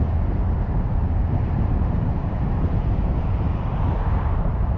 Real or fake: fake